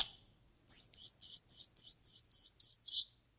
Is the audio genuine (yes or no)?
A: yes